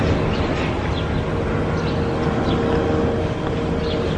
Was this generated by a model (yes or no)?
no